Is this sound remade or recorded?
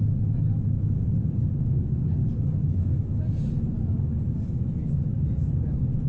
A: recorded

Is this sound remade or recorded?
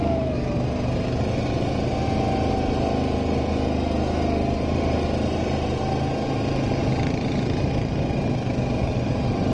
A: recorded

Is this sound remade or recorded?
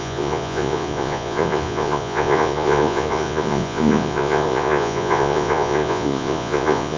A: remade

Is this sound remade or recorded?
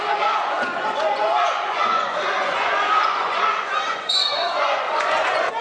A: remade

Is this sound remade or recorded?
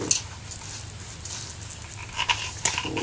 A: recorded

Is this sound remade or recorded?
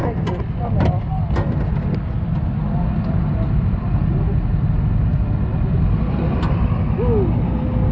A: recorded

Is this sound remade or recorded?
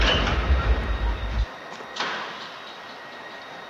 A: recorded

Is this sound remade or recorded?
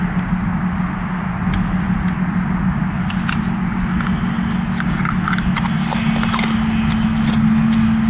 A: recorded